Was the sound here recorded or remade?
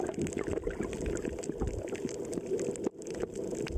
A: recorded